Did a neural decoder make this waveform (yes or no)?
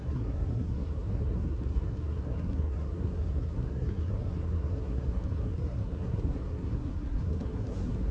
yes